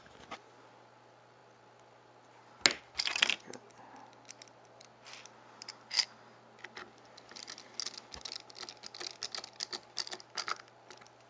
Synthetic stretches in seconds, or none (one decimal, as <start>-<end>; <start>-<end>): none